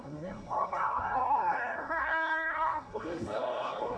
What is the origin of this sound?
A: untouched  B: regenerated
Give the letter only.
B